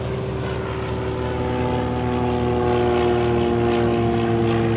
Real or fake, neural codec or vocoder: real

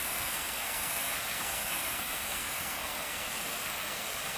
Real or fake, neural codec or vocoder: fake, codec, SNAC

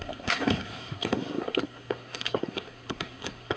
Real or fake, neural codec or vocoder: fake, codec, SNAC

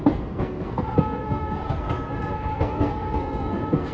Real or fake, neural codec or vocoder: fake, codec, SNAC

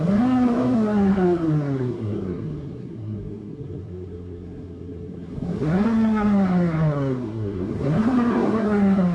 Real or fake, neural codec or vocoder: fake, codec, SNAC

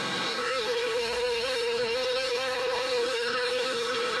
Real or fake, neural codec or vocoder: fake, codec, SNAC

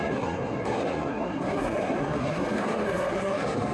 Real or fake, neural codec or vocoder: fake, codec, SNAC